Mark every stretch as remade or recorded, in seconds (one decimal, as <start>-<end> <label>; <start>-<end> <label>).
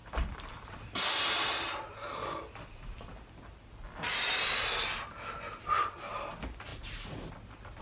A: 0.0-2.1 remade; 2.1-7.8 recorded